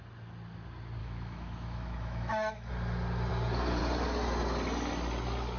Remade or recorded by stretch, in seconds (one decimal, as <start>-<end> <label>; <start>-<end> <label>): 0.0-1.0 recorded; 1.0-2.7 remade; 2.7-5.6 recorded